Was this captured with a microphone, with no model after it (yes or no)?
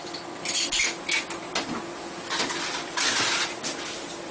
yes